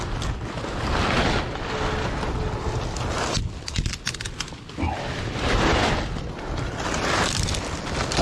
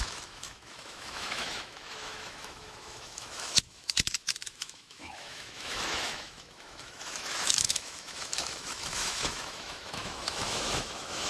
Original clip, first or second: first